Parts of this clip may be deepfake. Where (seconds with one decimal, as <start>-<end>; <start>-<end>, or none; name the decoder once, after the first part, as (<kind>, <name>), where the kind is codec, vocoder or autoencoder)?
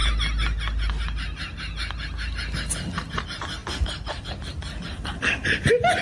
none